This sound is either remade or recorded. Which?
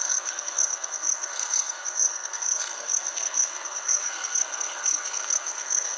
remade